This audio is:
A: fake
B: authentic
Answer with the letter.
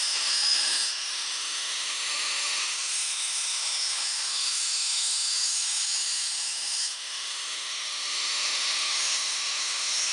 A